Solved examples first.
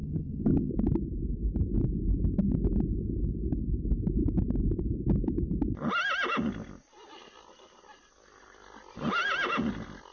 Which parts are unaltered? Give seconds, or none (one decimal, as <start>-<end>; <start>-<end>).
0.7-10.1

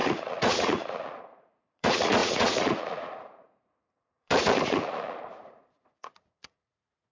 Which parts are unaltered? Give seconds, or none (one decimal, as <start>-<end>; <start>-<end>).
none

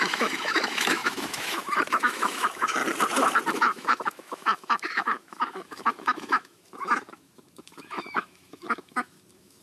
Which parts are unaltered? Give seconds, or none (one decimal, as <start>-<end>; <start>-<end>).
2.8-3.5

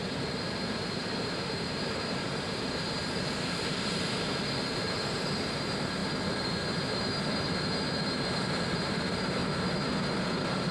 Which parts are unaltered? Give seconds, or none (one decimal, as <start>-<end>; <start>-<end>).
6.0-8.1; 9.4-10.2

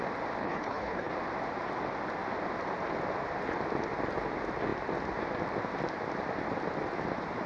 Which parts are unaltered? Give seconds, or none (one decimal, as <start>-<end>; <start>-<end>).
0.0-0.4; 1.1-7.5

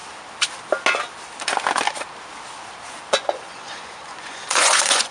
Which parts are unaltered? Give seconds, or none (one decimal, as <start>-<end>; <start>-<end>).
0.0-3.1

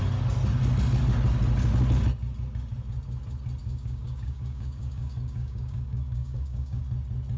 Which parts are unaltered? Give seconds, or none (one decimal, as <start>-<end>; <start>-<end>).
0.0-3.6; 6.8-7.4